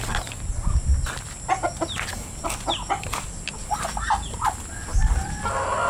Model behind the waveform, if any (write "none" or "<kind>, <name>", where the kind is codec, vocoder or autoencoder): none